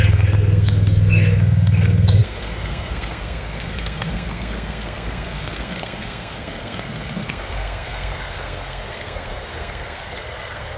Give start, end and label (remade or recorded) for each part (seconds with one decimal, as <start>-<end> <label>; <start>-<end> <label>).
0.0-10.8 remade